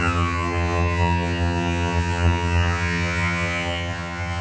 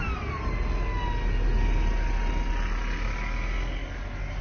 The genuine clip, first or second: second